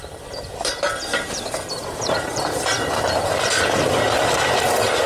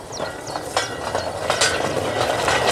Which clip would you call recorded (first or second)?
second